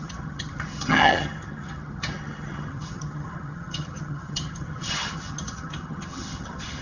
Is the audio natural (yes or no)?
no